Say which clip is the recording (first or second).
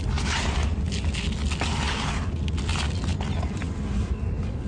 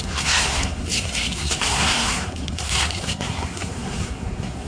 first